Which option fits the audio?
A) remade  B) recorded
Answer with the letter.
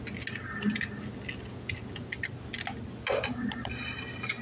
B